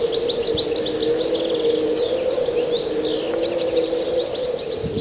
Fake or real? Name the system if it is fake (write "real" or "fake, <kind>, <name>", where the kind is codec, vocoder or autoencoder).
real